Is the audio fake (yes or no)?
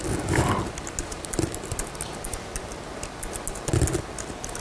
no